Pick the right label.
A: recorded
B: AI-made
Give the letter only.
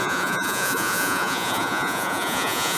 B